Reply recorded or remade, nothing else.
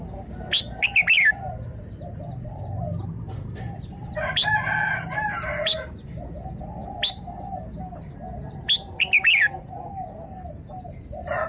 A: recorded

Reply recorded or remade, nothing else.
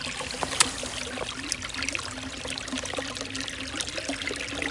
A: recorded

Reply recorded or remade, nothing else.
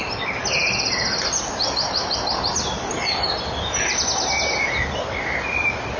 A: recorded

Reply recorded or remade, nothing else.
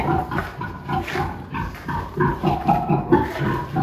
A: recorded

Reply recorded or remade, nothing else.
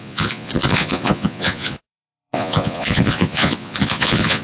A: remade